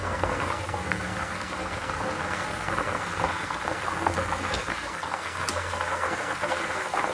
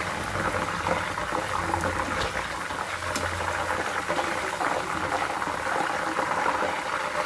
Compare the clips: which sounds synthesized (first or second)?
first